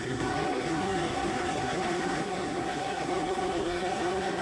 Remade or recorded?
remade